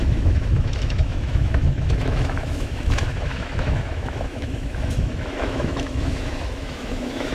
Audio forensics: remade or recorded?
remade